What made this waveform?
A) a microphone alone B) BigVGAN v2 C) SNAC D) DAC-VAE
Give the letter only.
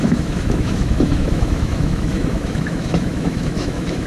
D